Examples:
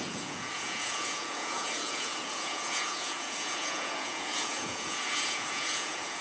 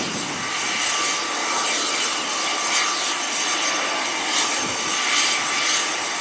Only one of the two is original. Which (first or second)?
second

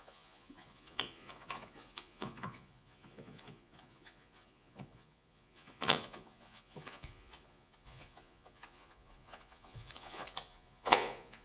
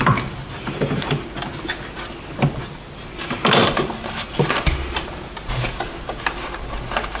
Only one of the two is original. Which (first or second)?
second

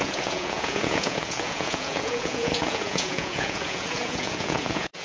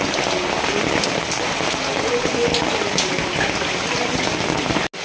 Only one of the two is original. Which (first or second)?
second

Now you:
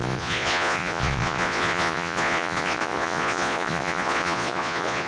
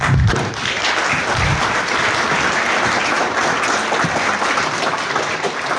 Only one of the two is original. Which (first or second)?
second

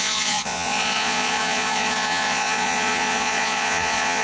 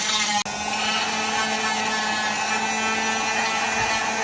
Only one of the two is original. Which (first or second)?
second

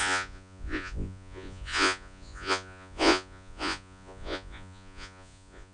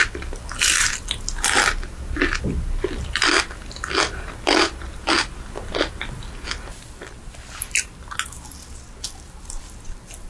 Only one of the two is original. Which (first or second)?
second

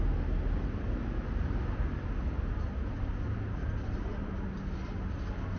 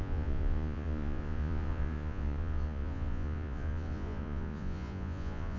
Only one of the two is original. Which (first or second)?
first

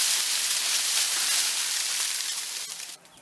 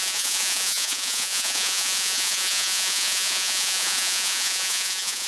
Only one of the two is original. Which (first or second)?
first